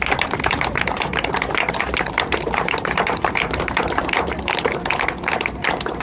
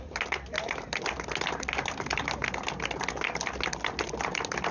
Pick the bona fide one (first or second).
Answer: second